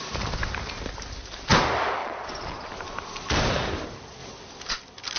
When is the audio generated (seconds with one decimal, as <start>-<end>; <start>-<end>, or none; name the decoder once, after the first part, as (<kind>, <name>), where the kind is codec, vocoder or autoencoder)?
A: 2.0-2.7 (vocoder, Vocos)